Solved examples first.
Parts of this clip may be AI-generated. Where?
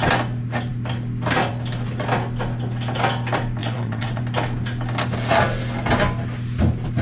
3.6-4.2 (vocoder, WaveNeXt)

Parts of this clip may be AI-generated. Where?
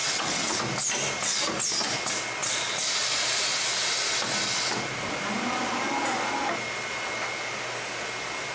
0.0-0.6 (vocoder, WaveNeXt)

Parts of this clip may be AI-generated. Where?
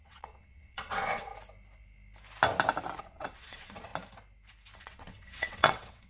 0.0-1.3 (vocoder, WaveNeXt); 3.0-3.9; 4.8-6.1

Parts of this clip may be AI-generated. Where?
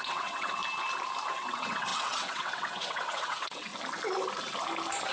0.0-0.6 (vocoder, WaveNeXt); 1.3-3.7